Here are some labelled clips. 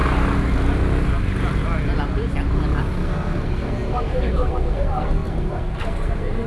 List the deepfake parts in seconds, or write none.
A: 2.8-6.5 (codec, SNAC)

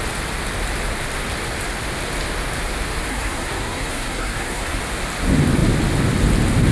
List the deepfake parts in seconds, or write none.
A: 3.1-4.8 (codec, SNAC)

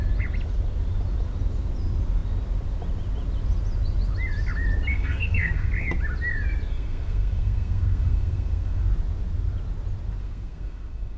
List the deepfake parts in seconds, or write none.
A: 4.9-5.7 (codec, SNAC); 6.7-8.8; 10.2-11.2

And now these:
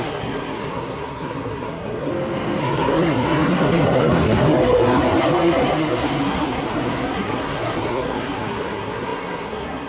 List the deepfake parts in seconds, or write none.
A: 0.0-2.1 (codec, SNAC); 2.6-9.9